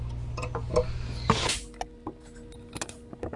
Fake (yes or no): no